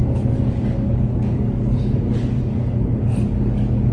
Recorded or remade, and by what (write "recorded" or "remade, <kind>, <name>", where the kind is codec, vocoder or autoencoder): remade, codec, DAC